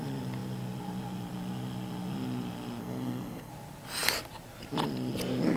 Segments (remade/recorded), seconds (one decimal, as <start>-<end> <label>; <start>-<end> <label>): 0.0-2.8 recorded; 2.8-3.5 remade; 3.5-5.6 recorded